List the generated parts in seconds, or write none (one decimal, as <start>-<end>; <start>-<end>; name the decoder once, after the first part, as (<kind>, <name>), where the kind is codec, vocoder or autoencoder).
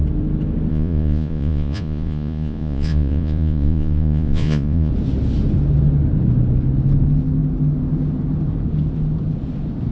0.7-4.9 (vocoder, Vocos)